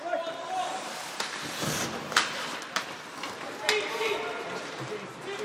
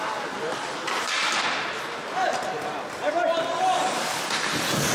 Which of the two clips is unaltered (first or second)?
second